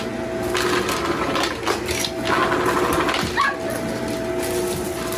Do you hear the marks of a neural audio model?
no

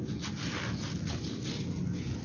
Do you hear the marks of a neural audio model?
no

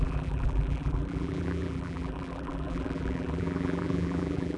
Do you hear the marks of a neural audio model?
yes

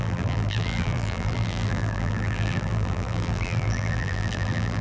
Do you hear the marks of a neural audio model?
yes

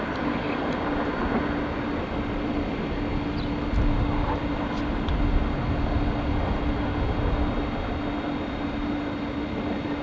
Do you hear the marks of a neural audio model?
no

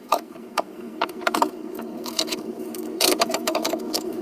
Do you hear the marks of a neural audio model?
yes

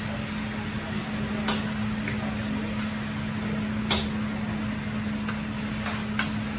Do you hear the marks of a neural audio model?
no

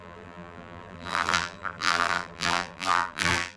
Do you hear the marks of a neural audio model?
yes